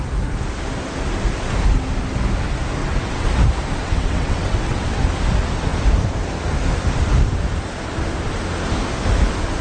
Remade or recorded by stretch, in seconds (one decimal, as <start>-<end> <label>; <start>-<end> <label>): 0.0-2.8 recorded; 2.8-3.3 remade; 3.3-3.8 recorded; 3.8-5.0 remade; 5.0-9.6 recorded